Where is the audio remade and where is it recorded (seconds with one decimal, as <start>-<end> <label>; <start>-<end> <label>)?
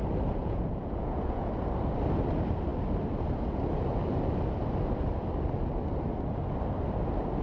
0.0-0.4 recorded; 0.4-1.5 remade; 1.5-7.4 recorded